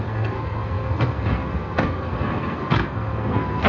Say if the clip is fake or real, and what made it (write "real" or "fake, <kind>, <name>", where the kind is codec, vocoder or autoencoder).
fake, codec, SNAC